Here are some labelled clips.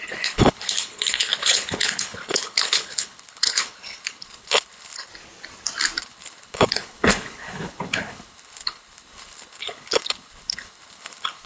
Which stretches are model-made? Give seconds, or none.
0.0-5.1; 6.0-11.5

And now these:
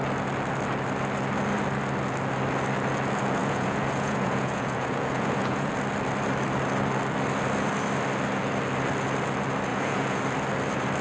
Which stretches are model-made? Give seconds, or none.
3.4-5.7; 9.7-10.2

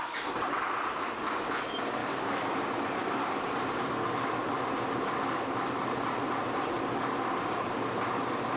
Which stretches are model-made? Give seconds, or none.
2.0-3.9; 4.4-6.6

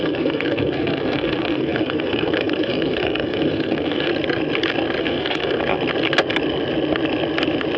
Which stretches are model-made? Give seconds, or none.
0.0-4.1; 5.0-5.6

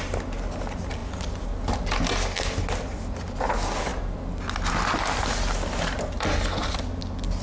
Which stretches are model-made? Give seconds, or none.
none

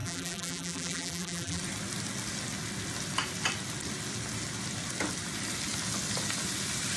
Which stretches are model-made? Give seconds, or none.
0.0-1.6

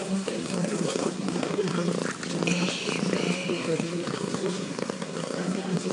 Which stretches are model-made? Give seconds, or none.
0.0-1.9; 3.5-5.9